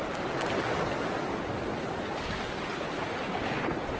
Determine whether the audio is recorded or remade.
recorded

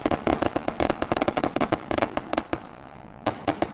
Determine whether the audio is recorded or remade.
remade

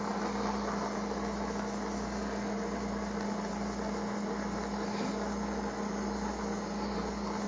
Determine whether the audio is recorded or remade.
recorded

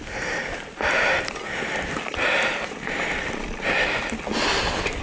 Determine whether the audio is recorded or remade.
recorded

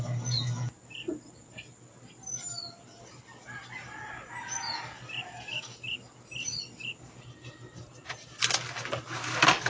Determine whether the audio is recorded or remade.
recorded